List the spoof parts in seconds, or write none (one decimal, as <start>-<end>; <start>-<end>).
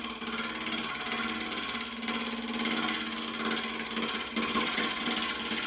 4.5-5.1